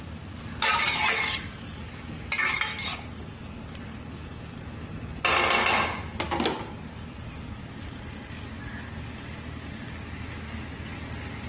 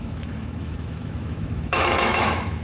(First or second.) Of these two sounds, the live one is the first